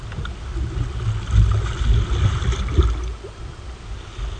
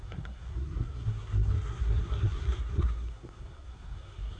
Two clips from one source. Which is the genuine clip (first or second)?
first